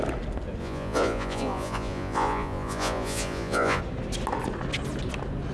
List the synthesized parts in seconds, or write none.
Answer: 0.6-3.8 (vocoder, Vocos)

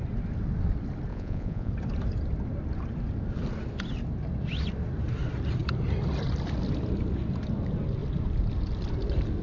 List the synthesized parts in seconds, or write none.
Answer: 1.1-1.7 (vocoder, Vocos)

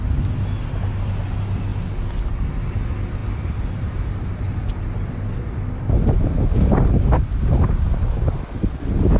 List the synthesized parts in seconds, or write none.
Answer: none

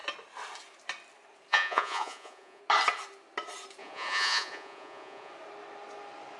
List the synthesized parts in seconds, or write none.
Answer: 1.5-2.6 (vocoder, Vocos); 3.8-5.3

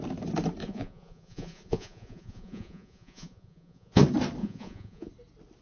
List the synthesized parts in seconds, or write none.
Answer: 0.6-4.0 (vocoder, Vocos); 4.4-5.1

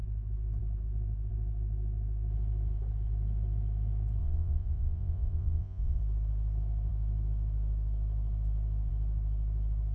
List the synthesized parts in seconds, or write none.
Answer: 4.2-6.0 (vocoder, Vocos)